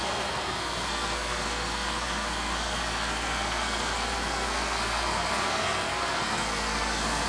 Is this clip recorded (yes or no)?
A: no